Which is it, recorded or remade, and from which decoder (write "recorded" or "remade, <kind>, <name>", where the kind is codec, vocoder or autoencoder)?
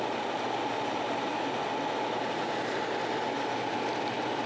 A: recorded